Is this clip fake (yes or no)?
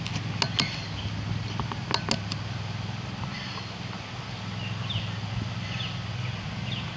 no